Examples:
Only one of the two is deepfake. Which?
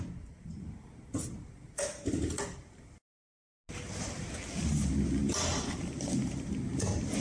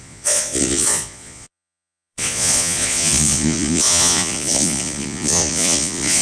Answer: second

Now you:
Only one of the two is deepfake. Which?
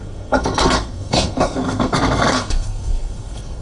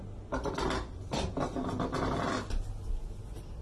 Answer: first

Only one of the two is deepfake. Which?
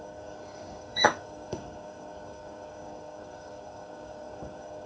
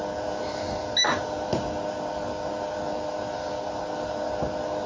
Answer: first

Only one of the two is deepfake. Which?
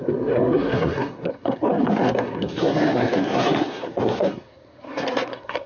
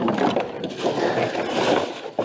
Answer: first